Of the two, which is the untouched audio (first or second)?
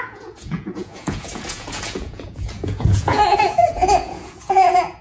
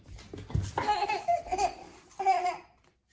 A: second